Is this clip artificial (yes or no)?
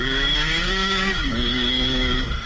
yes